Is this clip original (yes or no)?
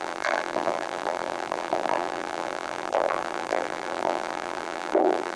no